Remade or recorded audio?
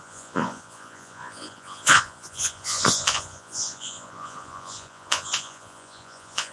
remade